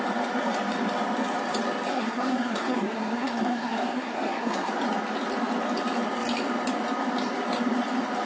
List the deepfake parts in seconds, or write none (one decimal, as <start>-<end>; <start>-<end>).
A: 1.9-4.7